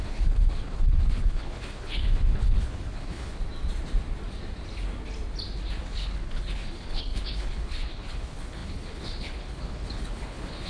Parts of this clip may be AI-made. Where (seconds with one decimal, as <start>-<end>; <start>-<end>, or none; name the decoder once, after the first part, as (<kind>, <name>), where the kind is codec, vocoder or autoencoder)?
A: 0.0-3.4 (codec, HILCodec); 5.8-10.7